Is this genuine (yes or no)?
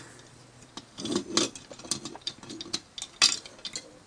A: yes